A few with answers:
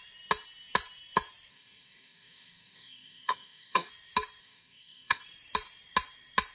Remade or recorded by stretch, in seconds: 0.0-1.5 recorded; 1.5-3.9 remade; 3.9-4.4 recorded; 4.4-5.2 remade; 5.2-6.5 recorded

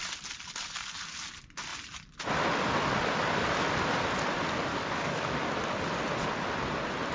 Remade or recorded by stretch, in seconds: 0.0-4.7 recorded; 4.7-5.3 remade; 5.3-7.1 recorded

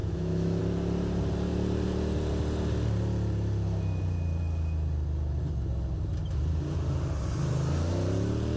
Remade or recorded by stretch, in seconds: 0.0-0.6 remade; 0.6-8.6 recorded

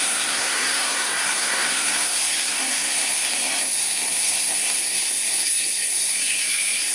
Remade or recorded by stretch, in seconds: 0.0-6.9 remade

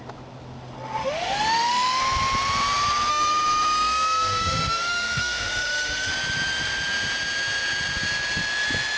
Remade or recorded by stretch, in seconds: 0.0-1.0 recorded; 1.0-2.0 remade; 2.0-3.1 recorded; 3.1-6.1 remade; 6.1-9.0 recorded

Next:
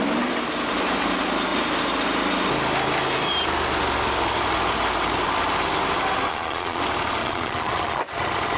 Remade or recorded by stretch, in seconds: 0.0-6.3 recorded; 6.3-6.8 remade; 6.8-7.2 recorded; 7.2-8.0 remade; 8.0-8.6 recorded

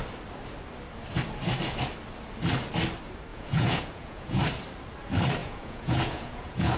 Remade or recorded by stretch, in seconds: 0.0-3.3 recorded; 3.3-4.4 remade; 4.4-5.4 recorded; 5.4-6.8 remade